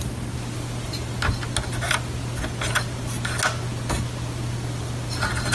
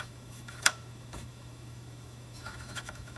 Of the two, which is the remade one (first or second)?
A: second